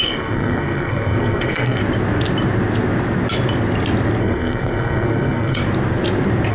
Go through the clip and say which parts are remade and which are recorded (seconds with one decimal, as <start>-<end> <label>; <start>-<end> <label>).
0.0-1.8 remade; 1.8-4.2 recorded; 4.2-5.6 remade; 5.6-6.5 recorded